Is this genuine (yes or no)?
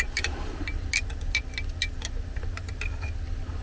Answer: yes